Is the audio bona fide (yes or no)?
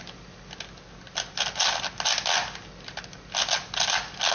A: yes